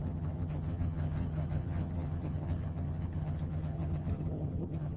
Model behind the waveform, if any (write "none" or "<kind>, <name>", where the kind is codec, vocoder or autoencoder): vocoder, HiFi-GAN